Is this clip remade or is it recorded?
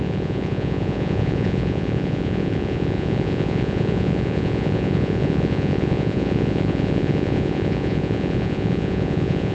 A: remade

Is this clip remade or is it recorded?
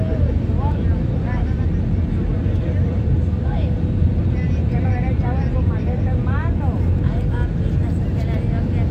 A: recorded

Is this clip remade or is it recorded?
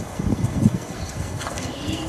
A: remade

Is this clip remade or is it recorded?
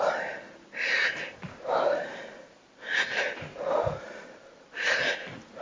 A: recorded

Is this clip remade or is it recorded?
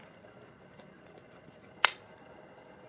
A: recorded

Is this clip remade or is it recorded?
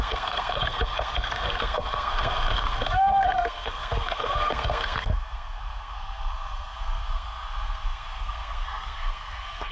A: remade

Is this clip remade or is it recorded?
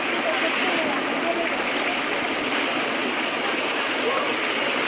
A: recorded